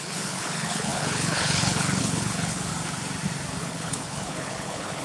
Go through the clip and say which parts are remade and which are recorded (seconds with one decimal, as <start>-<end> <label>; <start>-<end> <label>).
0.0-2.7 remade; 2.7-3.6 recorded; 3.6-5.0 remade